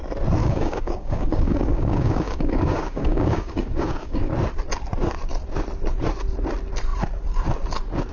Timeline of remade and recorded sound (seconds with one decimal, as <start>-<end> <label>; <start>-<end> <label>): 0.0-0.4 recorded; 0.4-4.3 remade; 4.3-8.1 recorded